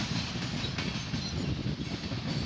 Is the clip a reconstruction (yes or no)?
no